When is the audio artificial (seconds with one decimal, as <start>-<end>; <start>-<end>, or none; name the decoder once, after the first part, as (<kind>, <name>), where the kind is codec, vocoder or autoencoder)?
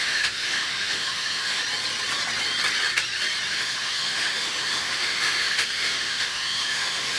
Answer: 0.0-1.6 (autoencoder, DAC-VAE); 3.5-7.2